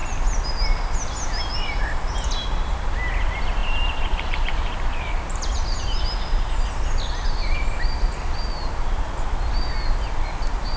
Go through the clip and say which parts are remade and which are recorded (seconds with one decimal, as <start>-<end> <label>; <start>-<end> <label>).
0.0-3.6 recorded; 3.6-6.0 remade; 6.0-10.8 recorded